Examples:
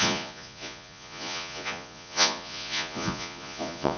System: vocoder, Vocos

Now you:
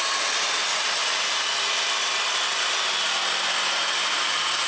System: none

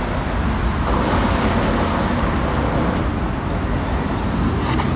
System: none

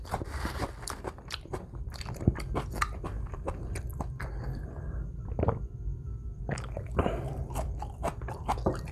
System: vocoder, BigVGAN v2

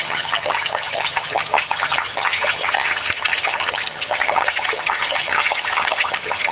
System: vocoder, HiFi-GAN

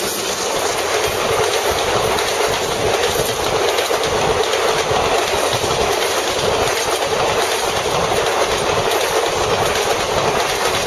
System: none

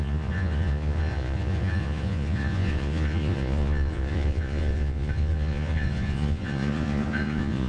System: vocoder, Vocos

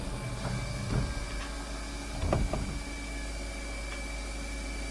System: none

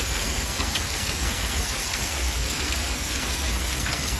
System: codec, SNAC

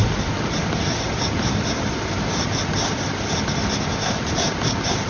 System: none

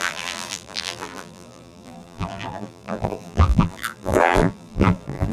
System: vocoder, BigVGAN v2